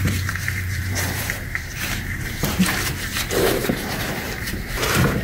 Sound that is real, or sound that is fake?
fake